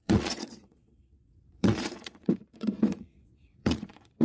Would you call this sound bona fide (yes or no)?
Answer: no